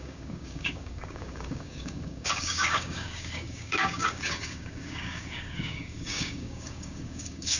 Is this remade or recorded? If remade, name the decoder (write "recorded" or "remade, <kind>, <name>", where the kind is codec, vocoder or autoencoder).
remade, codec, DAC